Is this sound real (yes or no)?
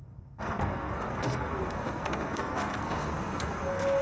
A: no